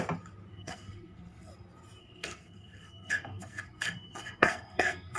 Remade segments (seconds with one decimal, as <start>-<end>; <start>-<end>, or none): 0.5-1.5; 2.0-5.2